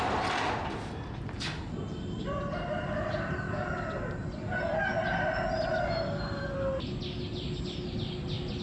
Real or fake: real